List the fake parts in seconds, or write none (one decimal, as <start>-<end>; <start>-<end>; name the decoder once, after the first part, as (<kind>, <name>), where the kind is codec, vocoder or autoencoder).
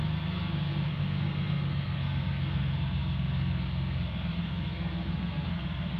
0.0-6.0 (codec, SNAC)